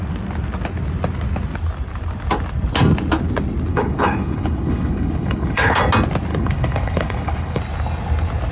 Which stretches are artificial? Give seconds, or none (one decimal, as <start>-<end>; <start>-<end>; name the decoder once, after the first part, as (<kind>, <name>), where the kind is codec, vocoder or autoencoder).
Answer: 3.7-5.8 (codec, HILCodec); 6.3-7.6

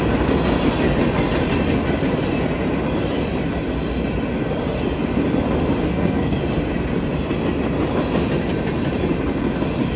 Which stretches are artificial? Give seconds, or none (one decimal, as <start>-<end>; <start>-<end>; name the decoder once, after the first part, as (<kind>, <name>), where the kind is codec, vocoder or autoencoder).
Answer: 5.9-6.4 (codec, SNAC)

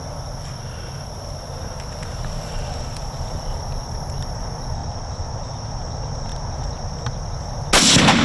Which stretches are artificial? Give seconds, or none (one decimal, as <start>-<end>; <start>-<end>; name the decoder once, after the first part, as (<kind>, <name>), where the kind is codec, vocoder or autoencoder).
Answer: none

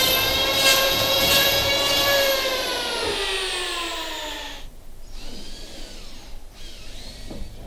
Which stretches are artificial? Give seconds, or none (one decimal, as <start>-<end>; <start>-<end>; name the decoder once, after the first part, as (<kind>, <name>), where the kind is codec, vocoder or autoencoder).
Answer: 0.7-1.7 (vocoder, Vocos)

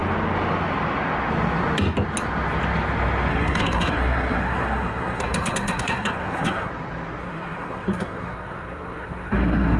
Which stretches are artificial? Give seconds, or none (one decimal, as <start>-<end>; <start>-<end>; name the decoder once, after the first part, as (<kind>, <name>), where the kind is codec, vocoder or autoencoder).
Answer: 3.3-6.7 (codec, SNAC); 7.2-9.8

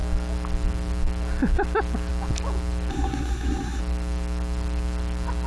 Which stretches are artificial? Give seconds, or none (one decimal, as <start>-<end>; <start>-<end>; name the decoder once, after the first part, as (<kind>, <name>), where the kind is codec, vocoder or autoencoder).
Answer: 2.9-3.8 (codec, SNAC)

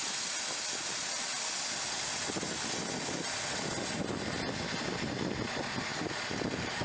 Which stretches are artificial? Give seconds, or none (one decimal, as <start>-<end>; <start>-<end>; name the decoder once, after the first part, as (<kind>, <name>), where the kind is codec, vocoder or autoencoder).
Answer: 5.9-6.8 (vocoder, BigVGAN v2)